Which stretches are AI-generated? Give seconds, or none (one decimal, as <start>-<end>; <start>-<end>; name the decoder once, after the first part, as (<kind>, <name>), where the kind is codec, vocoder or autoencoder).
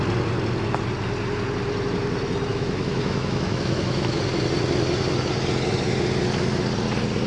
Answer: 2.5-4.2 (autoencoder, DAC-VAE)